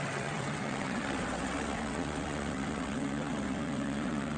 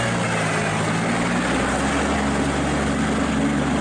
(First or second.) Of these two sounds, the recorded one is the second